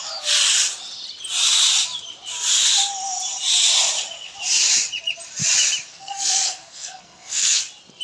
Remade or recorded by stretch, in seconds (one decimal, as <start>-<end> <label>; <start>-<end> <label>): 0.0-5.9 recorded; 5.9-7.6 remade; 7.6-8.0 recorded